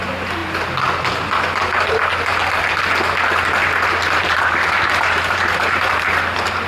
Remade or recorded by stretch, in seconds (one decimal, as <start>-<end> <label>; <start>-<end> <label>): 0.0-4.0 recorded; 4.0-6.1 remade; 6.1-6.7 recorded